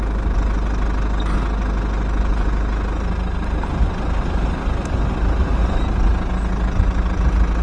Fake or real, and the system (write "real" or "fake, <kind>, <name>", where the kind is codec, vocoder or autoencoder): real